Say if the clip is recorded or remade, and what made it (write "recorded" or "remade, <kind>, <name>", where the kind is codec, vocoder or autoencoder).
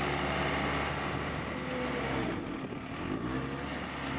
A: recorded